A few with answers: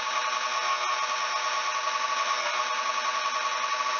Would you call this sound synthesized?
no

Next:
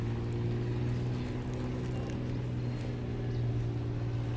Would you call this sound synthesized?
no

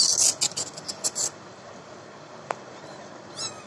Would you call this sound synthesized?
no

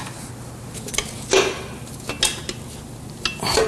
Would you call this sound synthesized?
no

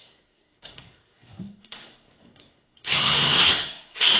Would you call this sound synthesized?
yes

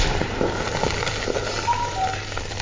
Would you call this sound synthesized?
no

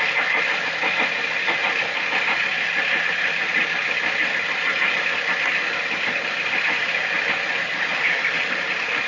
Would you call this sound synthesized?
no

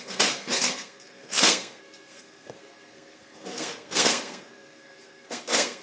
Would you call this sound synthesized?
yes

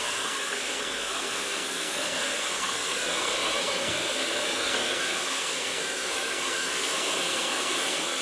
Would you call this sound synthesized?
yes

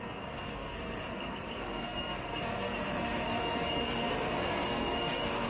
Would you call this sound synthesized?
yes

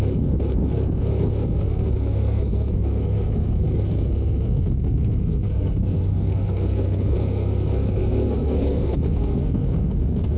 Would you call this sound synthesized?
yes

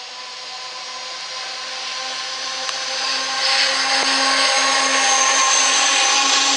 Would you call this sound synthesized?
no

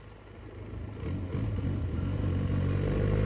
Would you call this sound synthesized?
no